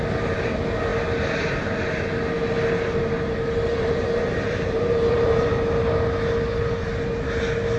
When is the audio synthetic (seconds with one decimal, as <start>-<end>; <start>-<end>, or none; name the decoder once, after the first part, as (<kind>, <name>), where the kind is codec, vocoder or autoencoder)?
3.7-5.5 (vocoder, BigVGAN v2)